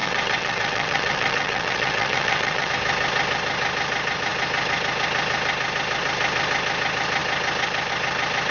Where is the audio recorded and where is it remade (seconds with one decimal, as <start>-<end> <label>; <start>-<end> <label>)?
0.0-2.7 remade; 2.7-8.5 recorded